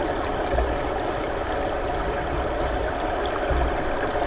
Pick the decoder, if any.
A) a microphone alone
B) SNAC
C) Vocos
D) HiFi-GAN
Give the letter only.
A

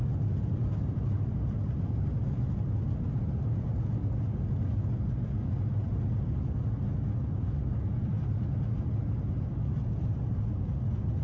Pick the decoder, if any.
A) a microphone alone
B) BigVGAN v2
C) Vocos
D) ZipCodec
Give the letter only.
A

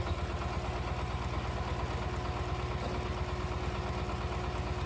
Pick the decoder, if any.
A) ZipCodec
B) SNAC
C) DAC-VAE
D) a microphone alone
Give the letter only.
D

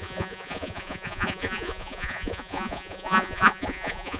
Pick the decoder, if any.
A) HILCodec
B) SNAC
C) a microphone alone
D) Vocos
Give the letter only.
D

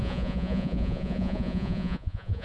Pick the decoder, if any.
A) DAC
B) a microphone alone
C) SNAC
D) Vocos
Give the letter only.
D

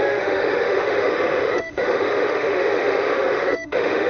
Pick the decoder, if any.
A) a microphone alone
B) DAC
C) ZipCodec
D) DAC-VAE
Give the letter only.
D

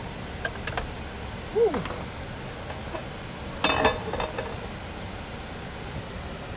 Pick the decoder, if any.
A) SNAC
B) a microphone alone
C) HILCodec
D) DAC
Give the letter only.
B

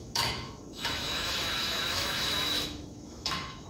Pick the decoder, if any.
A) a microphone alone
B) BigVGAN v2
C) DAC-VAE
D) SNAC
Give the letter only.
C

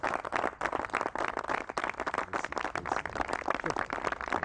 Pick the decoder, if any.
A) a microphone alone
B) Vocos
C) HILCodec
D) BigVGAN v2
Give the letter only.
A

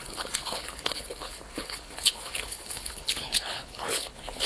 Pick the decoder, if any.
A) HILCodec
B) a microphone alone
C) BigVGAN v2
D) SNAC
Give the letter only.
A